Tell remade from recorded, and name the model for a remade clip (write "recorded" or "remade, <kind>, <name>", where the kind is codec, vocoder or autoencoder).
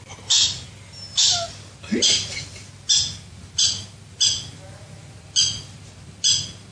recorded